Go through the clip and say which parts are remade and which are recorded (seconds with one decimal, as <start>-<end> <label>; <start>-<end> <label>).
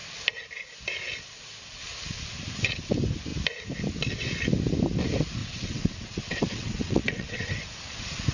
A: 0.0-5.4 recorded; 5.4-7.5 remade; 7.5-8.3 recorded